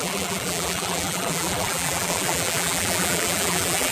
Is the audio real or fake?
fake